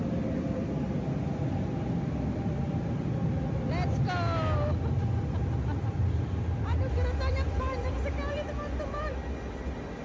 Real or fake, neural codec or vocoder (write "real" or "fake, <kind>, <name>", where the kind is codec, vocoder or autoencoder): real